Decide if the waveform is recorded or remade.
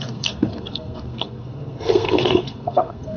remade